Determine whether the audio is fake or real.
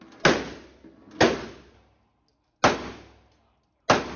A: real